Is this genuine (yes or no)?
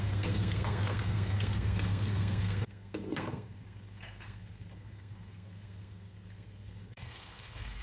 no